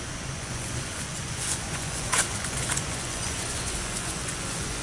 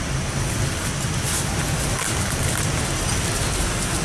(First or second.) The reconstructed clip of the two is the first